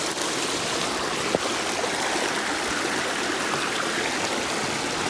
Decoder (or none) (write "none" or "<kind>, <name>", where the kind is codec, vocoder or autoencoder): none